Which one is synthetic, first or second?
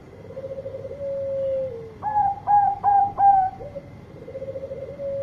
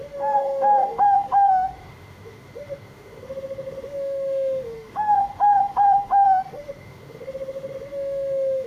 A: second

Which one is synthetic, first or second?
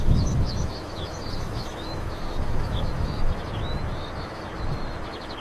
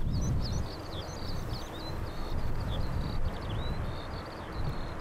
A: first